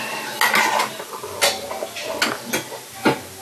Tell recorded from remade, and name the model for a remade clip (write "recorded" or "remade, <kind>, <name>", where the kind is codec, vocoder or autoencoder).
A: recorded